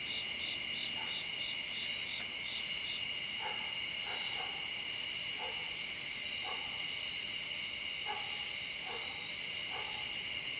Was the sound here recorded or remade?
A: recorded